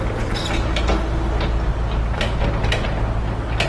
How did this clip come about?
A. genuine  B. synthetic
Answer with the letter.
A